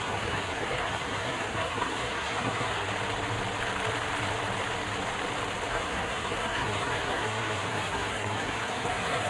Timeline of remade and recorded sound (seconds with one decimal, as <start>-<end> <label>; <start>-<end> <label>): 0.0-2.9 remade; 2.9-5.7 recorded; 5.7-9.3 remade